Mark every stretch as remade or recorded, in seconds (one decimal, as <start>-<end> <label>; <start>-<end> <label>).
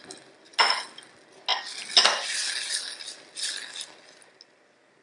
0.0-5.0 recorded